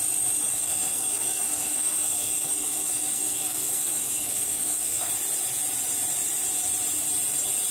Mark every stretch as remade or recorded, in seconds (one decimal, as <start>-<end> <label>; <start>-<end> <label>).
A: 0.0-0.5 recorded; 0.5-5.1 remade; 5.1-7.7 recorded